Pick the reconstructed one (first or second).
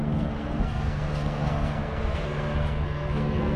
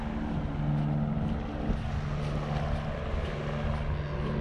first